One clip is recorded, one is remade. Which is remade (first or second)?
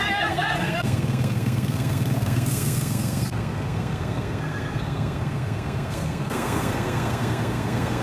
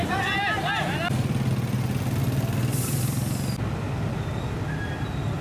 first